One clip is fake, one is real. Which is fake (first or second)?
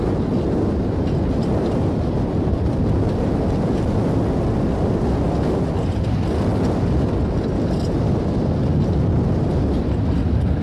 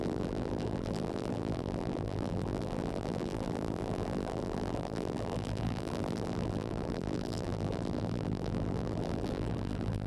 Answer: second